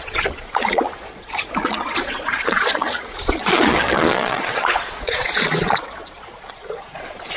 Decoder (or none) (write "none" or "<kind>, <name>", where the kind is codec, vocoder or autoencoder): vocoder, Vocos